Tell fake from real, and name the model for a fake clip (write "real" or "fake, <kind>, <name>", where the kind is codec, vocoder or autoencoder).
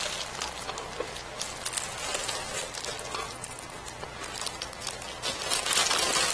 real